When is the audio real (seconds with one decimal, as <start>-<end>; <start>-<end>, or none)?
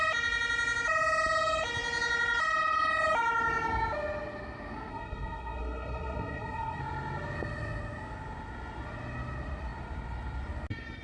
0.0-4.9; 6.8-11.0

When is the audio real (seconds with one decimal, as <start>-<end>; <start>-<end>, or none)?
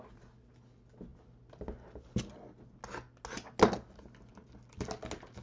0.0-5.4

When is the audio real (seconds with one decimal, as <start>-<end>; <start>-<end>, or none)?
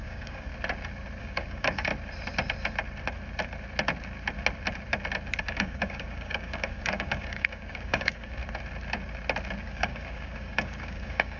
0.5-1.2; 1.9-5.4; 8.4-9.6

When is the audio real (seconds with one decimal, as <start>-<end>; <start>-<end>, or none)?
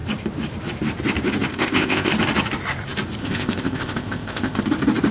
0.0-1.5; 2.1-3.2; 4.6-5.1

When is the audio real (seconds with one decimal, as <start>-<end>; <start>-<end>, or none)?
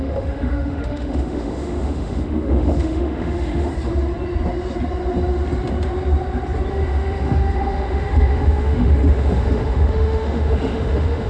3.7-6.7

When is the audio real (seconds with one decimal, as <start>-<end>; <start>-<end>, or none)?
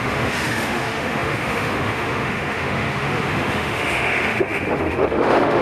none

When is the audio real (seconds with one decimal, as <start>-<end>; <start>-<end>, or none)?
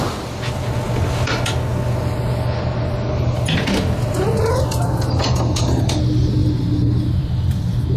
0.0-6.4